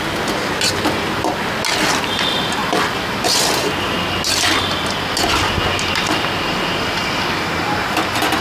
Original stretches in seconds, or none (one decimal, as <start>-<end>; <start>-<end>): 0.0-8.4